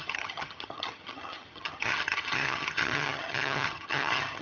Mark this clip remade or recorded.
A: remade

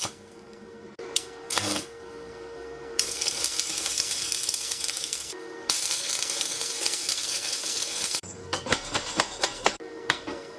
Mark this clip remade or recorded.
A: remade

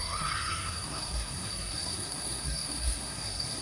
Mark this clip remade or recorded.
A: remade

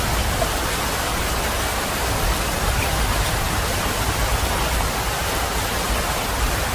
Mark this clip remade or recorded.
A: recorded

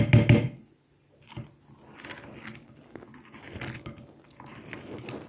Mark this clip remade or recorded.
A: recorded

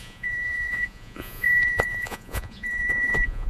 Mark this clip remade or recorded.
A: remade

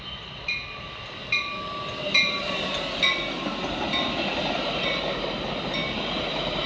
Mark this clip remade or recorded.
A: recorded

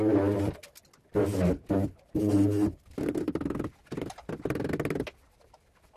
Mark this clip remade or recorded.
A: recorded